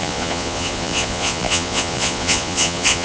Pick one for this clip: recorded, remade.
remade